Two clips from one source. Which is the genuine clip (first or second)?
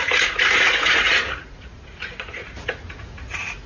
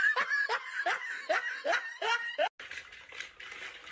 second